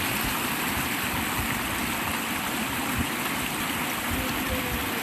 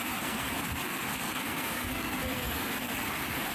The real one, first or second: first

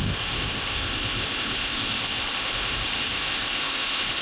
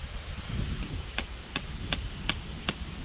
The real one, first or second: second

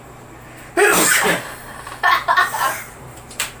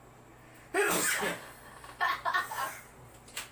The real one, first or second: second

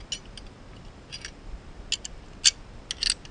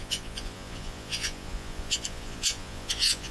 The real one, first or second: first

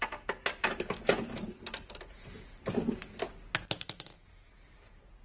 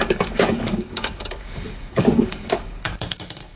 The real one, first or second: first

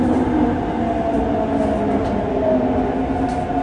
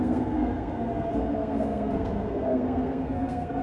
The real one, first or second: first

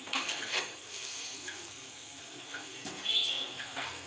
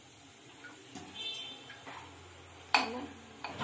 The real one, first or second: second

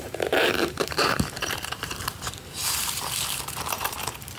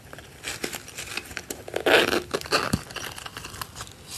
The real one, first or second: second